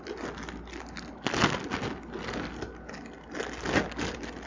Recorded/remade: recorded